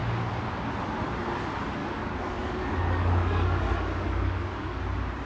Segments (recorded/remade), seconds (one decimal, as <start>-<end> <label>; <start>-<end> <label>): 0.0-1.8 recorded; 1.8-4.8 remade; 4.8-5.3 recorded